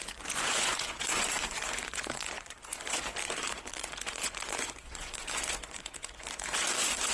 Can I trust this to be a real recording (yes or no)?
no